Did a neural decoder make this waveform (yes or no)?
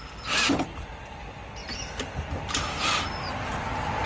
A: no